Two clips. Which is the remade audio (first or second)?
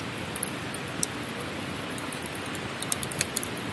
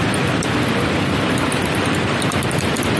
second